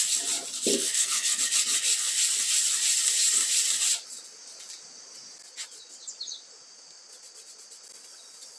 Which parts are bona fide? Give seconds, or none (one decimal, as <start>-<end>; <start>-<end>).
0.0-0.7; 1.4-8.6